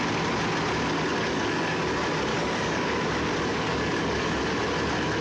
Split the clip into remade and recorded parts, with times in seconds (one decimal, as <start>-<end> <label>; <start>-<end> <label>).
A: 0.0-1.1 recorded; 1.1-1.8 remade; 1.8-2.3 recorded; 2.3-3.0 remade; 3.0-3.5 recorded; 3.5-4.4 remade; 4.4-5.2 recorded